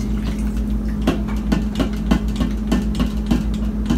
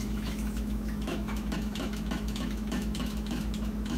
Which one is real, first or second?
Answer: first